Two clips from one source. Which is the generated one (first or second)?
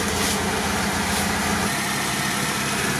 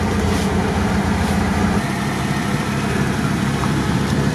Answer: second